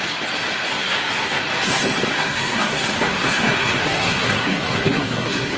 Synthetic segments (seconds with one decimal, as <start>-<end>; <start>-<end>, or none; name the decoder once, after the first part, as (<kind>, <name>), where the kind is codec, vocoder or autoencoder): 0.7-1.4 (codec, SNAC); 2.1-5.6